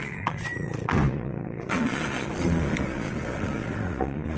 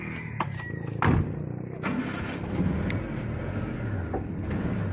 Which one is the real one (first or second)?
second